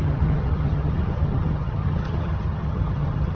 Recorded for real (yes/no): no